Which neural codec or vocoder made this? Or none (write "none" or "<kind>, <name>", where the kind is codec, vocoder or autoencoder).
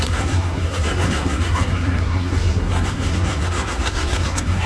codec, SNAC